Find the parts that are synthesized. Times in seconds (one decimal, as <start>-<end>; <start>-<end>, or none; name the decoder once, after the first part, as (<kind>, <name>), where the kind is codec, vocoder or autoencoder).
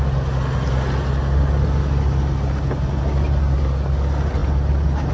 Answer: none